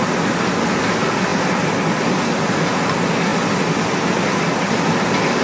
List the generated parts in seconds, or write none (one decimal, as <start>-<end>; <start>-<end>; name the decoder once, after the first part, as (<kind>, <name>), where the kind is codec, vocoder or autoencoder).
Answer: 1.3-2.6 (vocoder, BigVGAN v2)